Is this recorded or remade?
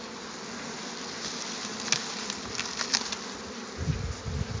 recorded